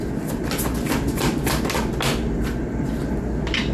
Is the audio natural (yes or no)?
yes